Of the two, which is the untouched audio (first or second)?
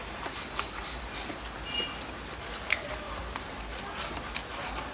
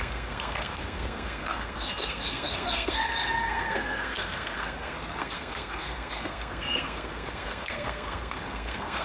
first